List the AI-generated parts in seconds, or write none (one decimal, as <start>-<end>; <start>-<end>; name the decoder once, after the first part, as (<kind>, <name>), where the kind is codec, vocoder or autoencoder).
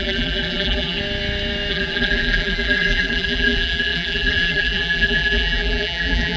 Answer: 0.0-1.0 (vocoder, BigVGAN v2); 1.7-6.4